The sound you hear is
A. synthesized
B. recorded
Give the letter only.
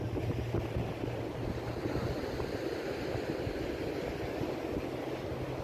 B